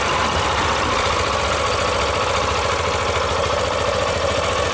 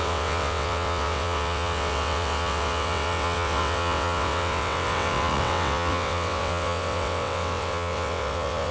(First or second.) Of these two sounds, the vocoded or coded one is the second